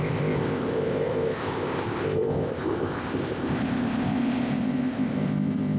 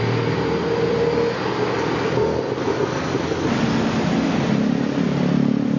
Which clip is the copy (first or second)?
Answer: first